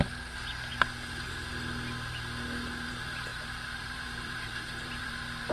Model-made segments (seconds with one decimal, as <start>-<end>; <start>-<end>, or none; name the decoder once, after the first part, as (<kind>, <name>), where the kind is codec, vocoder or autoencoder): 3.3-5.1 (vocoder, BigVGAN v2)